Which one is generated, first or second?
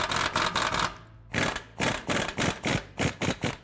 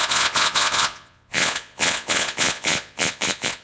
second